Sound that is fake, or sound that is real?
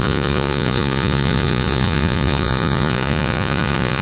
fake